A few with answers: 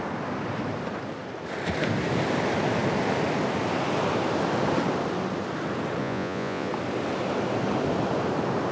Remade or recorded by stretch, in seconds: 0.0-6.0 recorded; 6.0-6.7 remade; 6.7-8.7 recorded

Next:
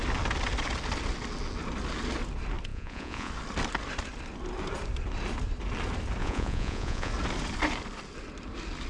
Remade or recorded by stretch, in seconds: 0.0-2.7 recorded; 2.7-3.3 remade; 3.3-6.2 recorded; 6.2-7.1 remade; 7.1-8.9 recorded

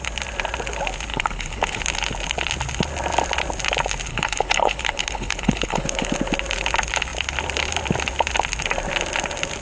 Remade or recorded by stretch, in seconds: 0.0-1.1 recorded; 1.1-1.8 remade; 1.8-4.1 recorded; 4.1-6.1 remade; 6.1-9.6 recorded

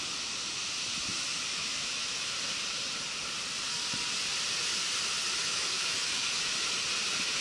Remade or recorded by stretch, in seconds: 0.0-1.5 recorded; 1.5-2.3 remade; 2.3-5.4 recorded; 5.4-6.3 remade; 6.3-7.4 recorded

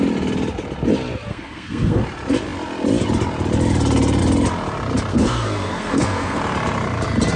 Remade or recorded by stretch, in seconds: 0.0-1.3 recorded; 1.3-2.0 remade; 2.0-5.1 recorded; 5.1-6.4 remade; 6.4-7.4 recorded

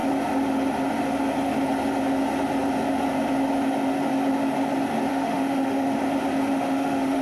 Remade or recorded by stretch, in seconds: 0.0-5.1 recorded; 5.1-6.0 remade; 6.0-6.5 recorded; 6.5-7.2 remade

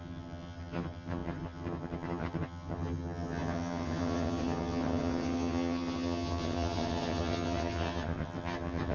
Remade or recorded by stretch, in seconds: 0.0-8.9 remade